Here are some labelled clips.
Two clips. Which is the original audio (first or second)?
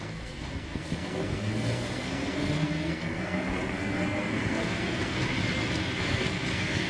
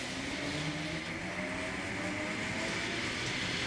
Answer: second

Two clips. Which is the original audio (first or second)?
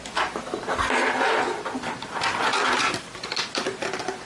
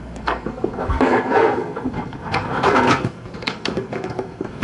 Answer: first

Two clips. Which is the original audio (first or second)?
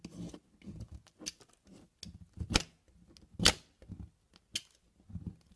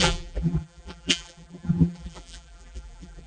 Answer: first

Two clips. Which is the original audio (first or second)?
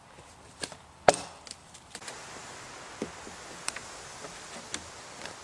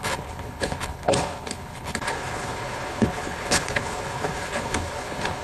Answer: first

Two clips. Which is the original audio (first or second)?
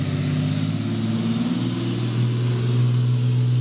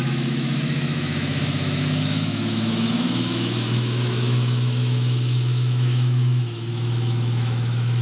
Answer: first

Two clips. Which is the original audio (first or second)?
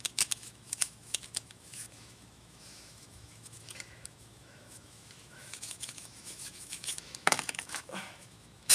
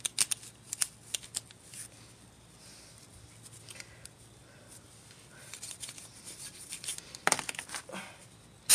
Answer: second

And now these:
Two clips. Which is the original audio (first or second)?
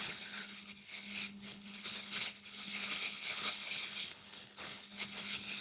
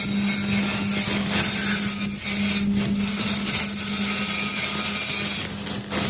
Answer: second